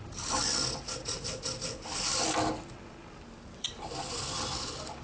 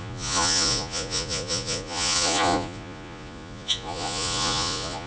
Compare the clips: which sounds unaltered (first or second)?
first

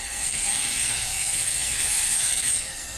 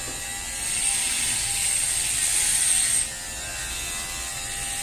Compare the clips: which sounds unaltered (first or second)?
second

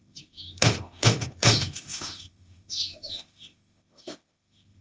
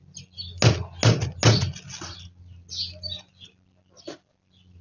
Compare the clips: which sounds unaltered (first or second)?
second